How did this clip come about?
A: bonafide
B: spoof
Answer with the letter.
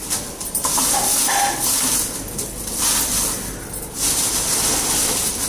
A